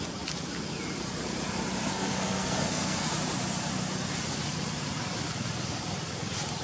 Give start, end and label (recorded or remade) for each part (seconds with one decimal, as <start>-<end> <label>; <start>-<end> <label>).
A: 0.0-1.9 recorded; 1.9-3.1 remade; 3.1-6.6 recorded